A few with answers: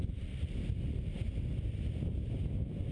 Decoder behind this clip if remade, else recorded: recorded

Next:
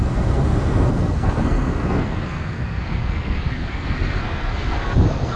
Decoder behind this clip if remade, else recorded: remade, codec, SNAC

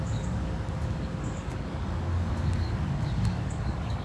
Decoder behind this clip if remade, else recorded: remade, codec, DAC